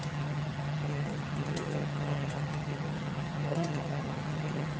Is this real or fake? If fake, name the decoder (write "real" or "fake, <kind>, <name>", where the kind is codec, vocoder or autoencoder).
fake, vocoder, HiFi-GAN